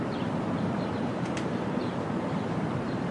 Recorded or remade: remade